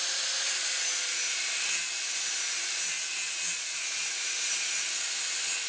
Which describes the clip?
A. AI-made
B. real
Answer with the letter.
A